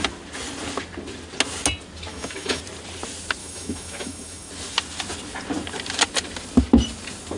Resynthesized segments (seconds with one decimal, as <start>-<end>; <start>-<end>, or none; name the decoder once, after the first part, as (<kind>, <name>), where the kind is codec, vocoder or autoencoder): 2.1-2.6 (autoencoder, DAC-VAE); 3.4-4.5